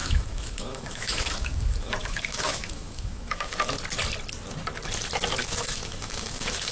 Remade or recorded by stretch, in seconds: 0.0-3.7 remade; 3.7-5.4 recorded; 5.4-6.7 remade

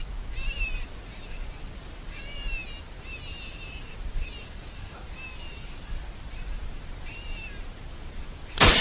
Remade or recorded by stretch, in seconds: 0.0-8.8 recorded

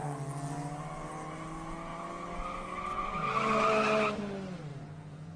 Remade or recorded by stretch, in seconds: 0.0-4.7 recorded; 4.7-5.4 remade

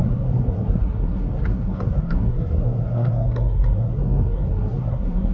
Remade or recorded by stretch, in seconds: 0.0-5.3 remade

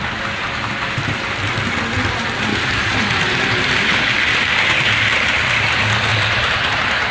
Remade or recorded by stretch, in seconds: 0.0-2.5 recorded; 2.5-4.0 remade; 4.0-4.5 recorded; 4.5-5.3 remade; 5.3-6.1 recorded; 6.1-7.1 remade

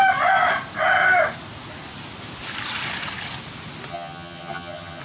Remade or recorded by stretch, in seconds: 0.0-3.9 recorded; 3.9-5.0 remade